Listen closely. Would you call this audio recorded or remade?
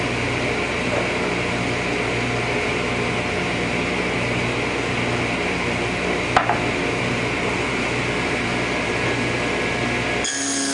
recorded